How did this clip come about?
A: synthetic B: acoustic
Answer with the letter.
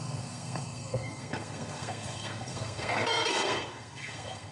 A